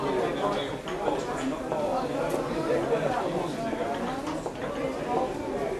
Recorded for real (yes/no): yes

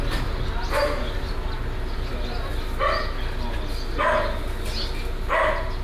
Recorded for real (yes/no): yes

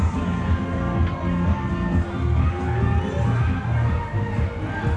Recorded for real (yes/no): yes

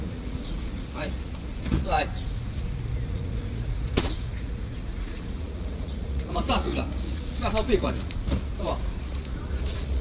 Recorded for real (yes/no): no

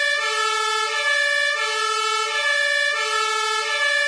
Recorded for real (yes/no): yes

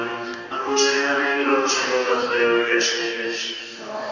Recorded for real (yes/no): no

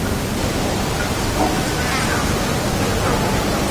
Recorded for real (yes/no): yes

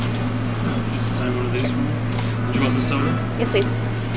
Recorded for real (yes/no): yes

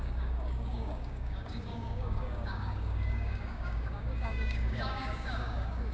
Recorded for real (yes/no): no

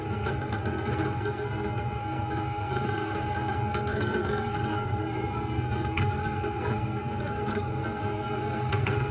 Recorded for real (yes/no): no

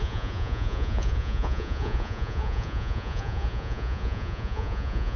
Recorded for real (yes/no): no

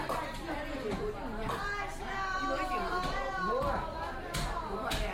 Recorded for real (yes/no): yes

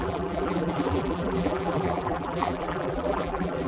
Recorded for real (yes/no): no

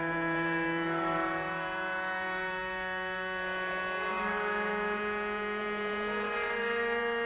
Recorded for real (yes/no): no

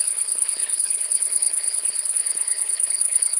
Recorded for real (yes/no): no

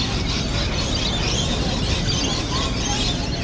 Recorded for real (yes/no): yes